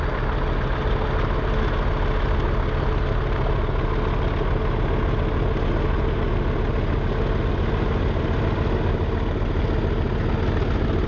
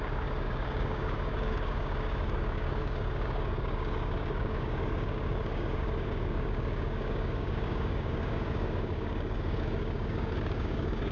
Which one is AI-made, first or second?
second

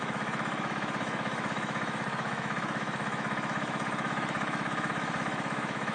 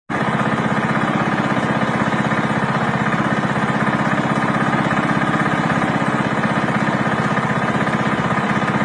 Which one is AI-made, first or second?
first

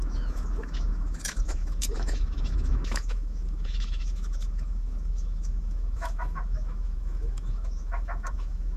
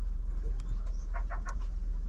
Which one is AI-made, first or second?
first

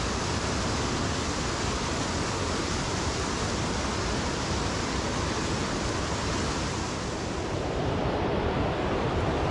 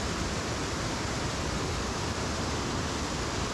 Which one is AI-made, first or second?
second